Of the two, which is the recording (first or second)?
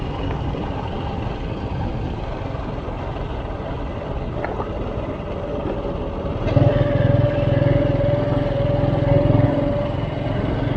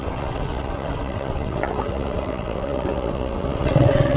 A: first